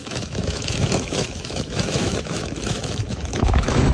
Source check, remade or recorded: remade